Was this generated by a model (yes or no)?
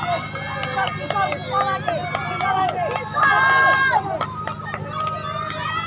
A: no